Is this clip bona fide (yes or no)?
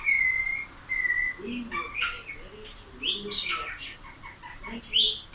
yes